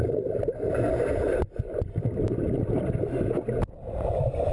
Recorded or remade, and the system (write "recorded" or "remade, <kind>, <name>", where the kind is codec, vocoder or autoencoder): recorded